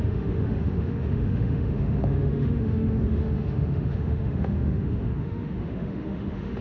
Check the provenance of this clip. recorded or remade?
remade